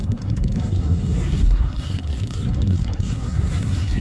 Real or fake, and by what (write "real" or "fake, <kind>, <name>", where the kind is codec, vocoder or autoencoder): fake, codec, SNAC